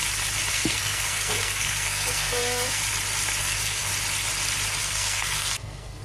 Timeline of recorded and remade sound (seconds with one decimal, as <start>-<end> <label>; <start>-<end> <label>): 0.0-0.5 recorded; 0.5-2.8 remade; 2.8-3.4 recorded; 3.4-3.9 remade; 3.9-4.8 recorded; 4.8-6.0 remade